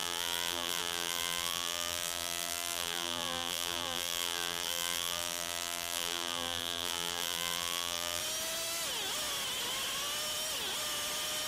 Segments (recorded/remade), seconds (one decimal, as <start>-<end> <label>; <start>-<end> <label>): 0.0-8.2 remade; 8.2-11.5 recorded